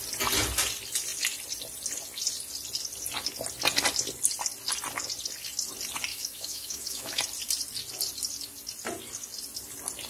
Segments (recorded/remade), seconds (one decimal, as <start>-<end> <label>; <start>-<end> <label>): 0.0-6.1 recorded; 6.1-7.2 remade; 7.2-10.1 recorded